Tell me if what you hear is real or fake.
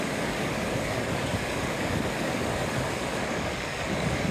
fake